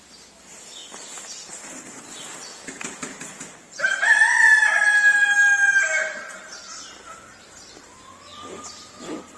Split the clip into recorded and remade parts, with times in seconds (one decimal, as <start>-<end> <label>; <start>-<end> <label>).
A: 0.0-9.4 recorded